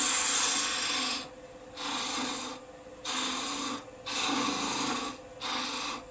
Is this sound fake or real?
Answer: real